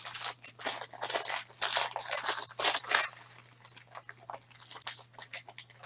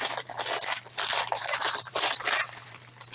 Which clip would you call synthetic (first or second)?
second